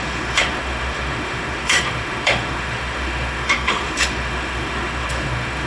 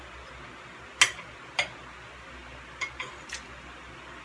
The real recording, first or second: second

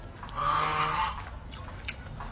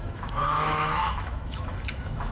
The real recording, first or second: first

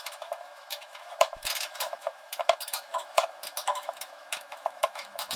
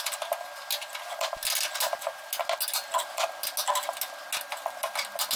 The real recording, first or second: second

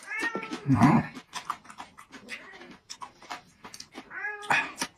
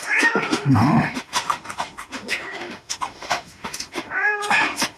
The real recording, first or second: first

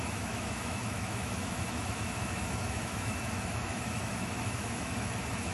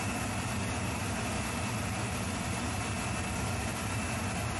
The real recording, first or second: second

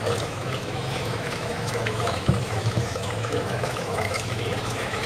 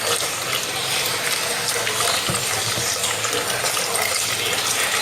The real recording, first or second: second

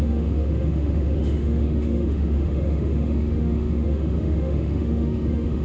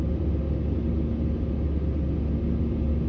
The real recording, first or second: second